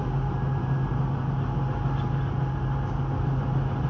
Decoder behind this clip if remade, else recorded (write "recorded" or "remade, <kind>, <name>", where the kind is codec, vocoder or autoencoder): recorded